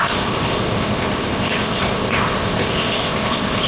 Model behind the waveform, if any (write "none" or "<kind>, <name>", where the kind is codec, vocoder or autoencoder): codec, ZipCodec